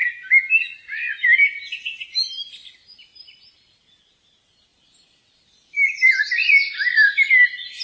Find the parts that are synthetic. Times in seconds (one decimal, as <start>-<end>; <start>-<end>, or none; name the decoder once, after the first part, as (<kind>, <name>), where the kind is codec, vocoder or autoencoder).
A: none